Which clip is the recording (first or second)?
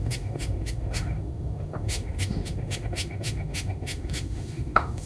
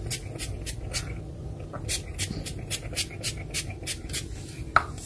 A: second